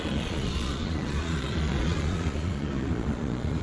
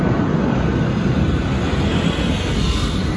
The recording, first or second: second